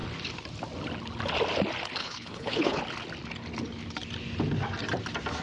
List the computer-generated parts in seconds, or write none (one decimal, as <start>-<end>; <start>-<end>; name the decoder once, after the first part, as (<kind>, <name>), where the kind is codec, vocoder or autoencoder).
2.0-2.8 (codec, HILCodec)